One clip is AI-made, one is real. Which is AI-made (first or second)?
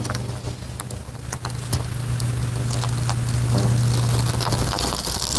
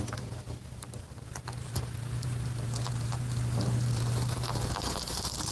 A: second